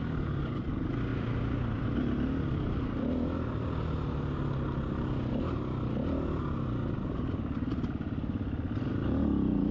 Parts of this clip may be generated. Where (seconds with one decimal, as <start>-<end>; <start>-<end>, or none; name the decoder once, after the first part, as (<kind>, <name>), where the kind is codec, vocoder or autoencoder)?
none